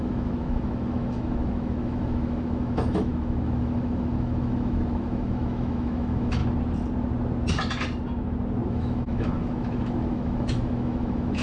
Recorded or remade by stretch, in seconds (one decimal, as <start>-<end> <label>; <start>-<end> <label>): 0.0-6.4 remade; 6.4-8.7 recorded; 8.7-11.4 remade